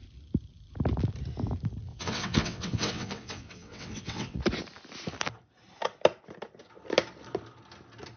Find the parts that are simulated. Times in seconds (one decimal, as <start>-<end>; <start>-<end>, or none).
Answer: 1.9-4.4